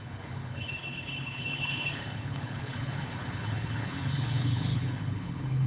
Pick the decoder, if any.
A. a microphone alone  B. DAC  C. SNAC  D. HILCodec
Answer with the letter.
D